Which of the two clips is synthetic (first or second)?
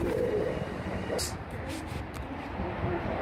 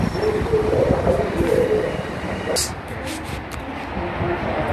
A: first